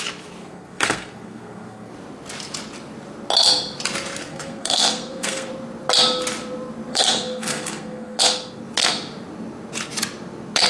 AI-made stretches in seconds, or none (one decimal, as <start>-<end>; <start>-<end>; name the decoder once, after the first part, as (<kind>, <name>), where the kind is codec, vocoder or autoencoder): 0.4-1.9 (codec, SNAC); 4.3-5.5; 6.9-8.2